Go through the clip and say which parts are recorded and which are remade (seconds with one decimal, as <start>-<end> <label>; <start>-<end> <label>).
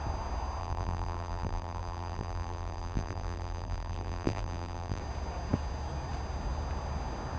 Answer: 0.0-0.6 recorded; 0.6-5.0 remade; 5.0-7.4 recorded